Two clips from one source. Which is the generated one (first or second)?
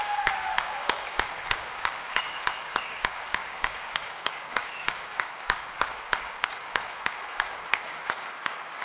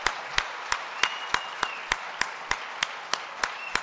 first